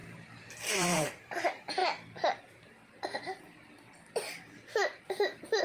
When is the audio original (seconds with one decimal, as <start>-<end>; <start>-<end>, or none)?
0.0-0.7; 1.8-5.6